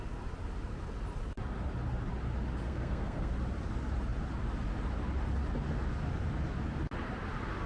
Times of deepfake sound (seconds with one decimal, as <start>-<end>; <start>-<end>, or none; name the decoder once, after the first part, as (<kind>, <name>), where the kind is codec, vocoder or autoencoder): 2.6-3.3 (codec, SNAC)